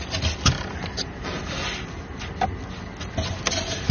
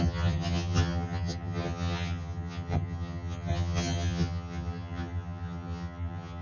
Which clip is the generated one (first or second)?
second